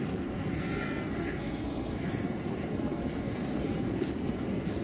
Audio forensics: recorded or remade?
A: remade